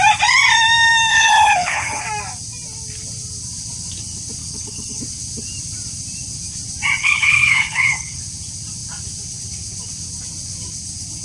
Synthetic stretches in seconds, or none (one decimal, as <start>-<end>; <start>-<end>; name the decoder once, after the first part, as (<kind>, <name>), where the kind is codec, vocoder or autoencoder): 1.1-2.0 (codec, HILCodec); 4.4-5.0; 7.0-8.2